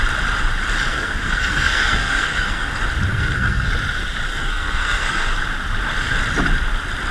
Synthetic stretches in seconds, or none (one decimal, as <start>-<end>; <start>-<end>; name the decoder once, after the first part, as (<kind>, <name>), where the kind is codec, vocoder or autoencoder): 0.9-2.7 (codec, SNAC); 3.1-3.7; 4.3-5.3